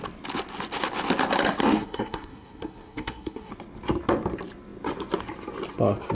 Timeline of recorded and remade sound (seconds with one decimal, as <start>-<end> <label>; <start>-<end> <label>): 0.0-1.6 recorded; 1.6-3.5 remade; 3.5-6.1 recorded